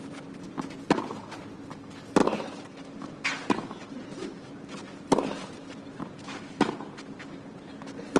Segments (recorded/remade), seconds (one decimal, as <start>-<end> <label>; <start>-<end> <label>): 0.0-8.2 recorded